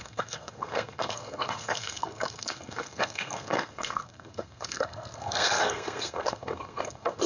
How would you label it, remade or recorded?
remade